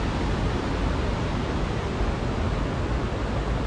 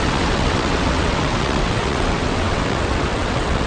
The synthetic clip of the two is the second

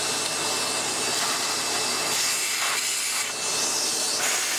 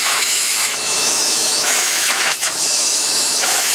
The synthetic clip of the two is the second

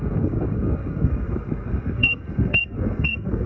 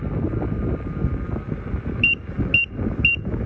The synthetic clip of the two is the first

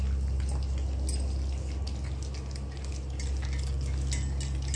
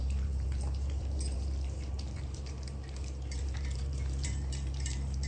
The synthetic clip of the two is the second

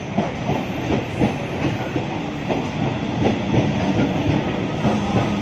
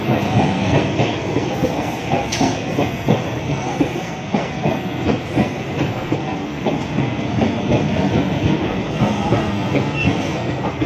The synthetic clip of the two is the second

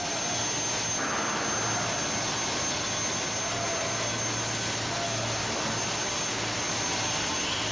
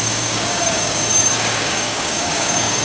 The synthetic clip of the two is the second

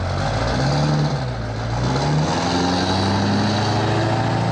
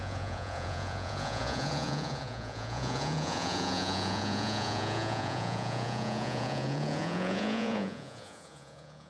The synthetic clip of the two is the second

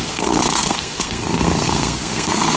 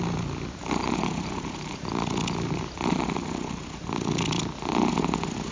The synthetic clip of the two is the first